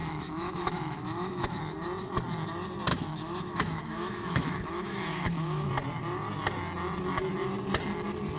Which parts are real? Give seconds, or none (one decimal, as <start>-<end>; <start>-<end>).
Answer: 1.6-2.9; 5.7-8.4